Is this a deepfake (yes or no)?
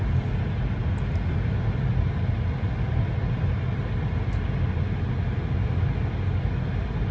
no